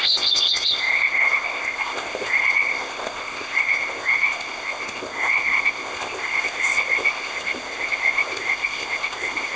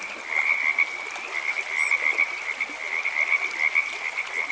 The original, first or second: second